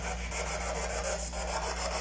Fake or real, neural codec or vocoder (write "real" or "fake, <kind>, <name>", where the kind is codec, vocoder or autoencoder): real